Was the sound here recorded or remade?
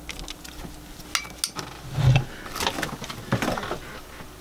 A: recorded